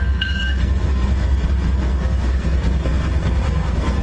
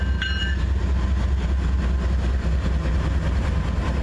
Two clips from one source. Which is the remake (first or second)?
first